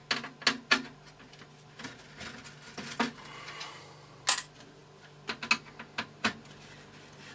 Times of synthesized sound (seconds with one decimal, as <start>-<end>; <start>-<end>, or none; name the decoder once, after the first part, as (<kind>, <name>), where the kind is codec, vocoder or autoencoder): none